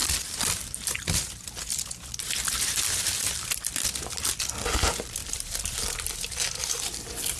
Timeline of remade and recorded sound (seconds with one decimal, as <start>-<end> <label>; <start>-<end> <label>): 0.0-4.4 remade; 4.4-5.2 recorded; 5.2-7.0 remade; 7.0-7.4 recorded